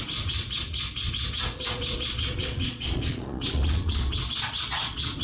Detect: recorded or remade remade